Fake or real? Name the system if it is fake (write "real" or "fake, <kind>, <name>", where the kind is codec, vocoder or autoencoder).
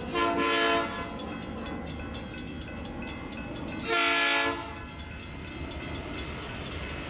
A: real